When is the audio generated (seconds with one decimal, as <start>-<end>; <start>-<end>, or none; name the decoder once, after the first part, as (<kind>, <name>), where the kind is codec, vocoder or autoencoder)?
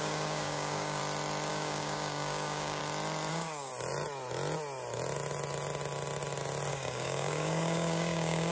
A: 0.0-1.0 (codec, DAC); 1.5-2.8; 3.3-3.7; 6.7-8.5